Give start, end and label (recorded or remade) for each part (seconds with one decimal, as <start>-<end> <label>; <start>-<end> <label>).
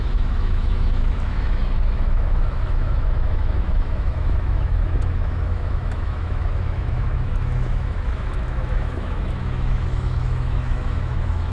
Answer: 0.0-11.5 remade